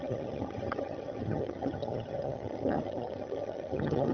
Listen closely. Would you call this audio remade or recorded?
remade